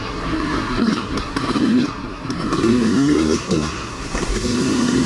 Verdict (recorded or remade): remade